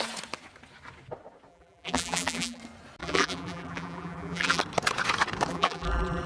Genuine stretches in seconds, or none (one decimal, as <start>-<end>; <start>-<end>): 0.0-1.5; 2.6-3.0; 4.6-5.5